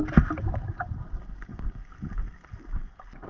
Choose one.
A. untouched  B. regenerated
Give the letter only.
A